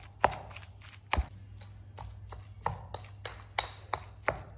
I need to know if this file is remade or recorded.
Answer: recorded